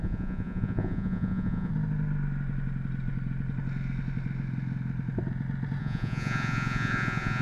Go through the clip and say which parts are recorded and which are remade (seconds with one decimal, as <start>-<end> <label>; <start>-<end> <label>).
0.0-1.7 remade; 1.7-5.8 recorded; 5.8-7.4 remade